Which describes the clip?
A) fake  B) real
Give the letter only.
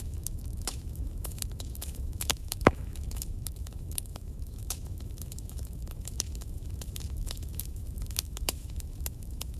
A